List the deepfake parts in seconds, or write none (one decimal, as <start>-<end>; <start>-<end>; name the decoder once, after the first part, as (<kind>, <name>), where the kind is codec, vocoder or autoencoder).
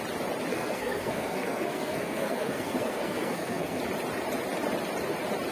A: 0.5-3.8 (codec, SNAC)